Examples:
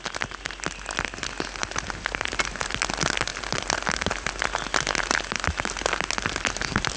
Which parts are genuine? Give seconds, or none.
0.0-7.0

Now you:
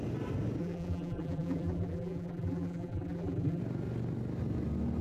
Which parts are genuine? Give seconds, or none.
0.0-0.6; 3.6-5.0